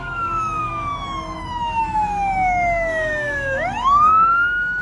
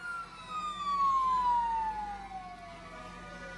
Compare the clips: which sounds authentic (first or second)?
second